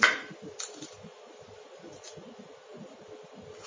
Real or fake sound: real